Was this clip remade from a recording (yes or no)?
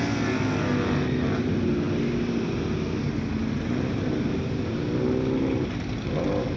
no